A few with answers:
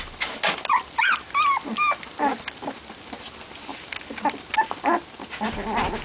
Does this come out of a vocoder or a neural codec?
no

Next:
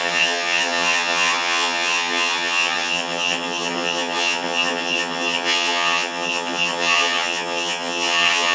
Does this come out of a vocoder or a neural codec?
yes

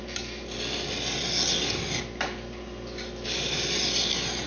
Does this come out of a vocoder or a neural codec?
no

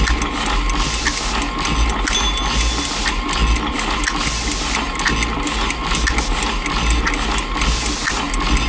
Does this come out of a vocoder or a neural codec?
no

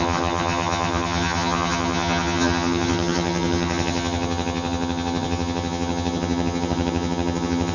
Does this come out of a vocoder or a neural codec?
yes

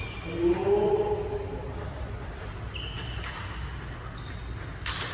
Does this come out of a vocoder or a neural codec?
no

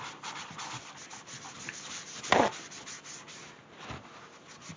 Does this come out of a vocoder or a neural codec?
no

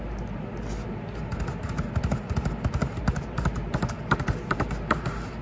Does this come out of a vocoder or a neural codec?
no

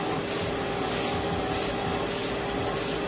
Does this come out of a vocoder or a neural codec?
no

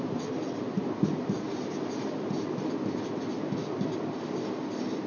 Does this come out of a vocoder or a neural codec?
no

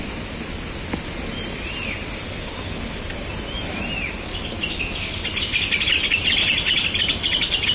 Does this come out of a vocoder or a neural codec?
no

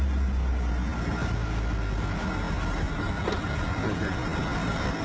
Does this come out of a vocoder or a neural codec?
no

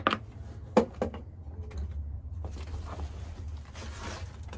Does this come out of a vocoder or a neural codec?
no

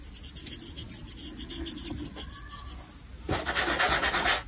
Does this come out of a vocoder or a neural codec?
no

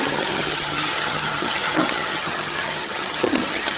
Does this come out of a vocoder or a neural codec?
yes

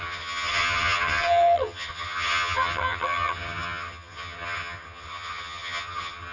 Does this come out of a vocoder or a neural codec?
yes